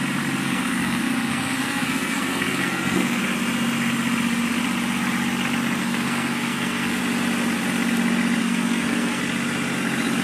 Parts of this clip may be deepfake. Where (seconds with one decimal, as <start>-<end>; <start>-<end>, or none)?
0.4-3.2; 5.8-7.0; 8.4-9.2